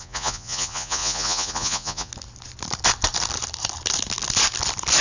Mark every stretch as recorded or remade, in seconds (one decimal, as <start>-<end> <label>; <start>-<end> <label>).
0.0-2.1 remade; 2.1-5.0 recorded